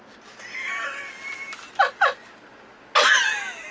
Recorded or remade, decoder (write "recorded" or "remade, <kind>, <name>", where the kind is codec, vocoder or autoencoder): recorded